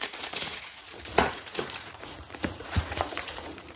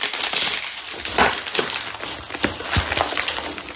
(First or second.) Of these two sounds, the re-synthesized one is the first